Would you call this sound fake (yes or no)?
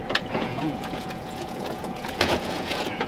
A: yes